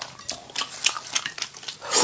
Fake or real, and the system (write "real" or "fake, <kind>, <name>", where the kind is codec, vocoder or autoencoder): real